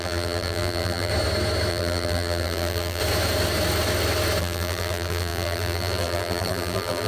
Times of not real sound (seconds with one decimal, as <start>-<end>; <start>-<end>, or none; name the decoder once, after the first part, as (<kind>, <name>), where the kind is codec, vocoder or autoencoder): 0.0-1.1 (vocoder, BigVGAN v2); 1.7-3.0; 4.4-7.1